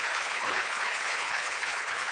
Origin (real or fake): fake